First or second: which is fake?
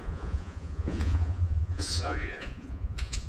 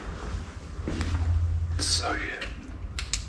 first